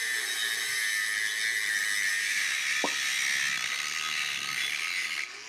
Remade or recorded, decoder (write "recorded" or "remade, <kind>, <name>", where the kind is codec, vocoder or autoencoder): recorded